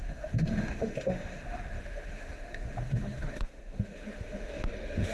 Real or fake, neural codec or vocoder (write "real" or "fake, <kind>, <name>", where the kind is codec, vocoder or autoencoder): fake, autoencoder, DAC-VAE